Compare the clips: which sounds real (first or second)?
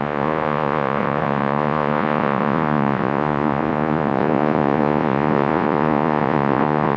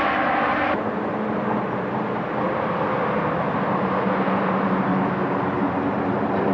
second